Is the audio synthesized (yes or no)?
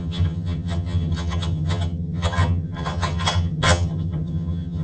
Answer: yes